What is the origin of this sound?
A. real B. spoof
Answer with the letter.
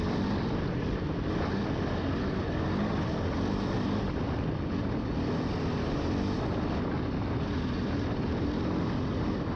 A